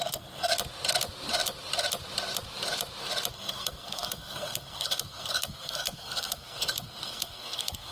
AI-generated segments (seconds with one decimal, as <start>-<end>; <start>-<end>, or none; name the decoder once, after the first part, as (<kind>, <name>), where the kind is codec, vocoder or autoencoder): 0.0-0.5 (codec, SNAC); 3.3-7.9